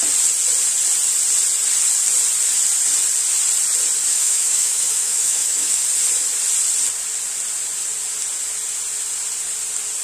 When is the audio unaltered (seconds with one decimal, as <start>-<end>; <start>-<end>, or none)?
0.0-4.1; 5.8-10.0